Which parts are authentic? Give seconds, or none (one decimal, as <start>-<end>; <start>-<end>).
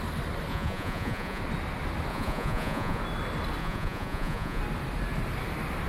0.0-0.5; 1.4-2.1; 3.0-3.6; 4.6-5.9